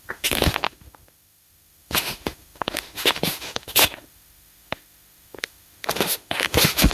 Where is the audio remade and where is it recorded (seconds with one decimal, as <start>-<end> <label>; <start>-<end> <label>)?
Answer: 0.0-6.9 remade